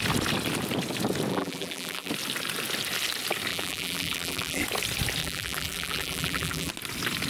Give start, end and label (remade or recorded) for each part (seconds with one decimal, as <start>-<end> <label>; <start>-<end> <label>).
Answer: 0.0-1.3 recorded; 1.3-2.1 remade; 2.1-3.5 recorded; 3.5-4.6 remade; 4.6-5.2 recorded; 5.2-6.7 remade; 6.7-7.3 recorded